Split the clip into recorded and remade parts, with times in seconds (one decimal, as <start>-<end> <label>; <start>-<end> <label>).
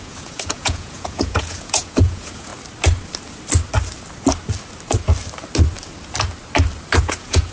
0.0-2.5 remade; 2.5-7.0 recorded; 7.0-7.5 remade